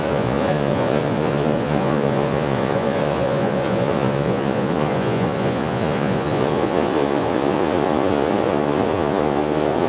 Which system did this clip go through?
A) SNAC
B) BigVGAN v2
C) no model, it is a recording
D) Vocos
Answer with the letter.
D